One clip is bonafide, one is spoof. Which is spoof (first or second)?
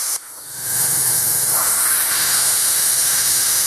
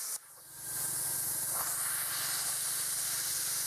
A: first